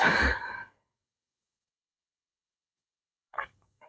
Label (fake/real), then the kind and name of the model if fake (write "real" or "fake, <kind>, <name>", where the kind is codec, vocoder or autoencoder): fake, codec, DAC